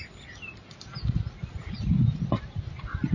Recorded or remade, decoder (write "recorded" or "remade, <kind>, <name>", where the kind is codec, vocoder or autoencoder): recorded